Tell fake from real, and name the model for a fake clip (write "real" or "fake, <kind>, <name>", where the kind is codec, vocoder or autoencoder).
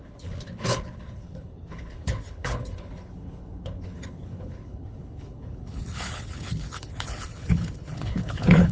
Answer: fake, codec, HILCodec